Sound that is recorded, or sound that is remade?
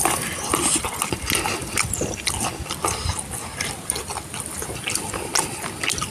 recorded